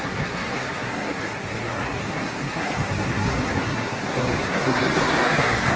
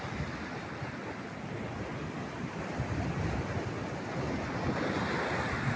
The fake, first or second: first